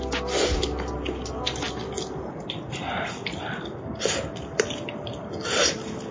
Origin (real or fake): real